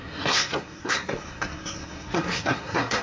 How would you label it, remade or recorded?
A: remade